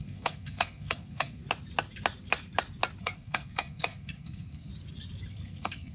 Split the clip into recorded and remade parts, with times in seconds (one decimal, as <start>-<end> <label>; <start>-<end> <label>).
0.0-1.4 remade; 1.4-3.0 recorded; 3.0-4.7 remade; 4.7-5.3 recorded; 5.3-5.9 remade